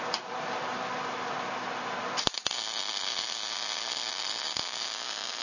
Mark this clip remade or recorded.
recorded